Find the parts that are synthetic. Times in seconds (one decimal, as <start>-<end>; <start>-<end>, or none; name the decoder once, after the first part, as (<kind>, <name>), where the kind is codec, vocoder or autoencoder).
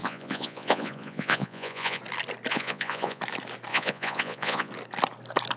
0.0-2.0 (vocoder, Vocos); 2.5-3.2; 3.7-4.7